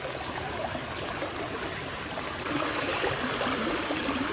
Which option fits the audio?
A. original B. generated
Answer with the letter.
A